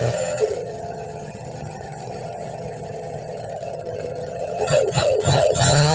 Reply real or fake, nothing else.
fake